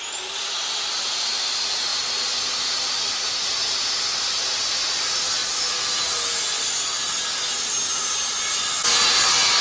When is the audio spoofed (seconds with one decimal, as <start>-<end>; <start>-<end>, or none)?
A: none

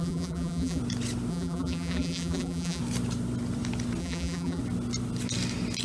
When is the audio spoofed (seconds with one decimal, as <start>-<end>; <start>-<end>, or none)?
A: 0.0-0.8; 1.3-2.8; 4.0-4.6

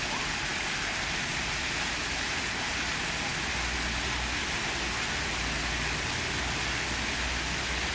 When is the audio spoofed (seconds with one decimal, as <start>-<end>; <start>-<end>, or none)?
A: none